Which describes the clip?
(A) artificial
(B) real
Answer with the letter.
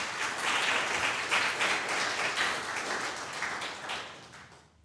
B